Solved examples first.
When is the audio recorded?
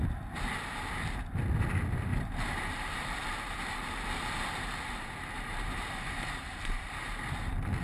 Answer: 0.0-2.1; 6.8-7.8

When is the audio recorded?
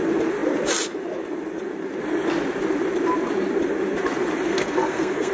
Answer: 0.0-4.5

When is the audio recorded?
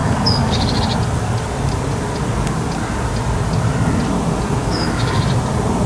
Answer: 0.8-4.6; 5.2-5.9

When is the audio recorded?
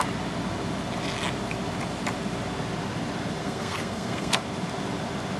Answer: 0.0-3.4; 4.4-5.4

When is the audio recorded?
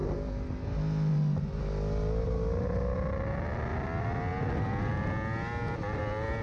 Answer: 0.0-6.4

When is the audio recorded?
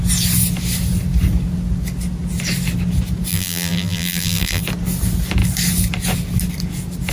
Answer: 0.0-3.3; 4.6-7.1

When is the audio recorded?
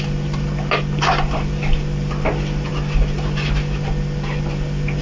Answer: 0.0-5.0